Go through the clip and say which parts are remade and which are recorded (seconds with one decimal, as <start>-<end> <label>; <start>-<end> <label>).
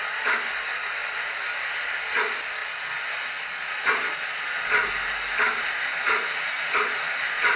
0.0-7.6 recorded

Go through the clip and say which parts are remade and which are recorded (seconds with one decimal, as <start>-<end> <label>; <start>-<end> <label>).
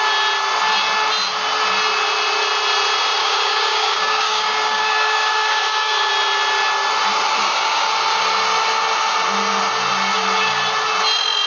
0.0-3.2 recorded; 3.2-6.1 remade; 6.1-7.4 recorded; 7.4-7.9 remade; 7.9-11.5 recorded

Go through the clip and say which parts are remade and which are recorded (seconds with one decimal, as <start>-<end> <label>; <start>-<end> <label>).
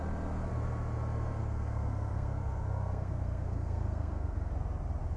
0.0-1.4 recorded; 1.4-4.5 remade; 4.5-5.2 recorded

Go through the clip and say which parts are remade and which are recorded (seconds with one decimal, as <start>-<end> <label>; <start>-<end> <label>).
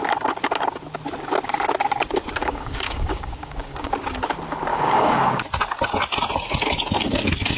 0.0-2.4 recorded; 2.4-3.9 remade; 3.9-4.7 recorded; 4.7-5.4 remade; 5.4-7.6 recorded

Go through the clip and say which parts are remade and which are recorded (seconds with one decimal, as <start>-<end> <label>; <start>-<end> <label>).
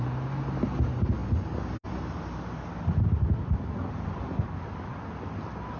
0.0-5.8 recorded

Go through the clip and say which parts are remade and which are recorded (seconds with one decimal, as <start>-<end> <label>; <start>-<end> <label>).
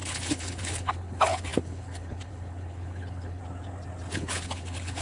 0.0-3.4 remade; 3.4-4.1 recorded; 4.1-5.0 remade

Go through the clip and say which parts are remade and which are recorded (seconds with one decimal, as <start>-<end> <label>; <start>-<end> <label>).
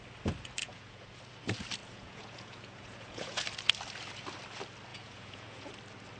0.0-0.6 recorded; 0.6-1.2 remade; 1.2-1.8 recorded; 1.8-3.4 remade; 3.4-4.9 recorded; 4.9-5.7 remade; 5.7-6.2 recorded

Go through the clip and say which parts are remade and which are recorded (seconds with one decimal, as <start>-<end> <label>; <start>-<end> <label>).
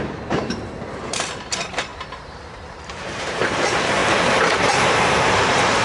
0.0-5.8 remade